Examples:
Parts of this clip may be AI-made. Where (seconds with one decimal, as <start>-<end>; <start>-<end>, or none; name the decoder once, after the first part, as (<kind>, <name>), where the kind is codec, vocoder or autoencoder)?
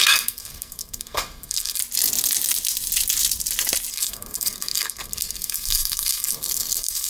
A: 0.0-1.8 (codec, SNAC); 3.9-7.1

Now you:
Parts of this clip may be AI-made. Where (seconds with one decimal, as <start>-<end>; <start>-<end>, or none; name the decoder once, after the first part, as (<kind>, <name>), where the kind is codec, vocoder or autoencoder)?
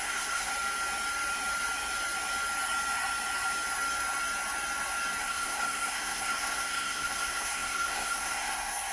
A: 0.0-0.5 (codec, SNAC); 5.2-8.9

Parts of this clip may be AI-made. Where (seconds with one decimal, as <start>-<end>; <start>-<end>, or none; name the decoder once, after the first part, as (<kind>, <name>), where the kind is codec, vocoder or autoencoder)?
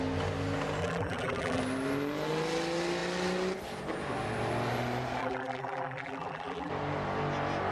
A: 0.8-1.6 (vocoder, BigVGAN v2); 5.2-6.7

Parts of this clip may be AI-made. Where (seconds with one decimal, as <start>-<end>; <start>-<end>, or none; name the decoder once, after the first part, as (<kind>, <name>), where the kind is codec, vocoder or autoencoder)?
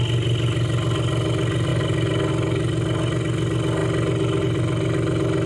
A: 1.7-2.3 (vocoder, BigVGAN v2)